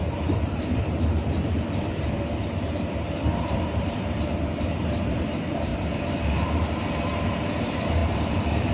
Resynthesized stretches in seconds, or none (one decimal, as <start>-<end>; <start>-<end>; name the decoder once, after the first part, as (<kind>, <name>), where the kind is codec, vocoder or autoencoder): 0.0-8.7 (vocoder, BigVGAN v2)